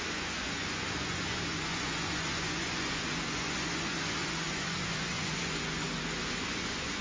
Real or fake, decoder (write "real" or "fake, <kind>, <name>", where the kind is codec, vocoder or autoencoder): fake, vocoder, Vocos